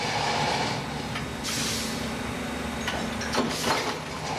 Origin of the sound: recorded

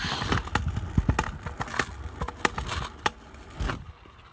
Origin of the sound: recorded